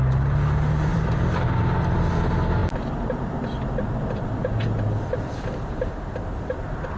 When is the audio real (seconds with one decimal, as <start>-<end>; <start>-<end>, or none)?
0.0-0.9; 2.1-7.0